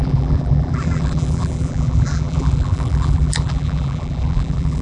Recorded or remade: remade